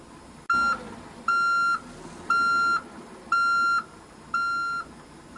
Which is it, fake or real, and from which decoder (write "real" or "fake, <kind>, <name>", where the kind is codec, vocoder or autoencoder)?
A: real